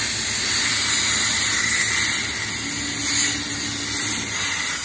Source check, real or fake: real